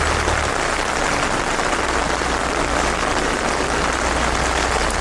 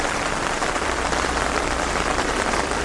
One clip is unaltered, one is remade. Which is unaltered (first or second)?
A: first